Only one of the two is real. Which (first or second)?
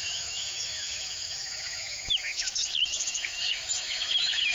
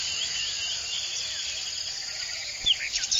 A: second